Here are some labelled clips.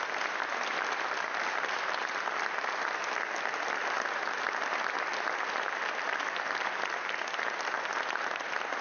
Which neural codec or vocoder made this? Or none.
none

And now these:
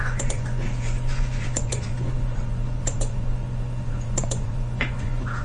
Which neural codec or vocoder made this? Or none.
vocoder, Vocos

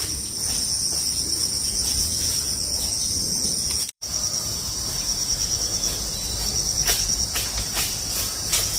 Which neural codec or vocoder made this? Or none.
vocoder, Vocos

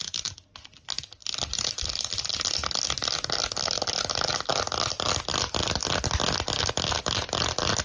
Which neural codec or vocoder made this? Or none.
none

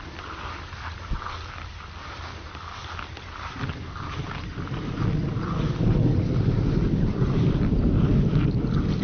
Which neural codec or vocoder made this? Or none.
none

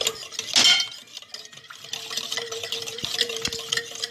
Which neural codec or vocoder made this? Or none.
none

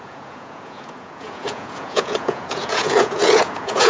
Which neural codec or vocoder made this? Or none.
vocoder, Vocos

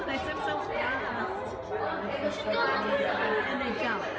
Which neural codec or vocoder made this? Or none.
none